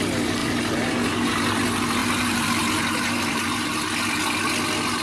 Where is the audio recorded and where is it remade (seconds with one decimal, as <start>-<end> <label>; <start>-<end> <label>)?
0.0-0.4 recorded; 0.4-0.9 remade; 0.9-2.0 recorded; 2.0-3.8 remade; 3.8-5.0 recorded